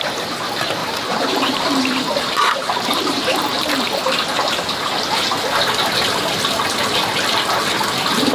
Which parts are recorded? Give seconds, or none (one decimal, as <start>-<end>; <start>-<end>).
0.0-0.8; 3.0-8.3